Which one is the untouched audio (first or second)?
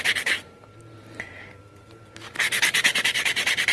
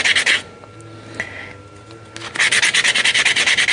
second